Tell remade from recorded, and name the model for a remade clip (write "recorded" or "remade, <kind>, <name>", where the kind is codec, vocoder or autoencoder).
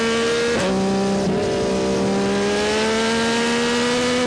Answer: recorded